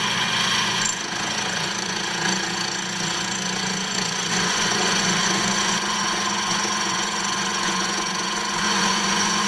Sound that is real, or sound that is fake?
fake